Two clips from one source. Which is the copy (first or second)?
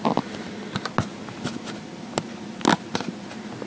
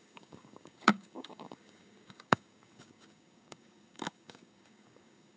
second